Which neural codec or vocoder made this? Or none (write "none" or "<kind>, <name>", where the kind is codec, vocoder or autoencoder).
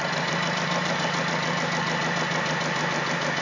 none